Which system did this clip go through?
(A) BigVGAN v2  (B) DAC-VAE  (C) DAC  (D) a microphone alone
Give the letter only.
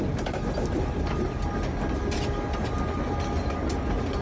D